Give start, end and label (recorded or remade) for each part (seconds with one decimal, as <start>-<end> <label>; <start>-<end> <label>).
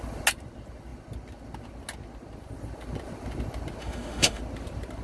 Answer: 0.0-3.8 recorded; 3.8-4.4 remade; 4.4-5.0 recorded